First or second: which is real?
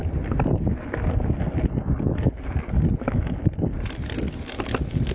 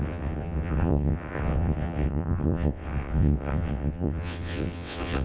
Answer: first